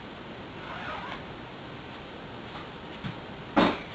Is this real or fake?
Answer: real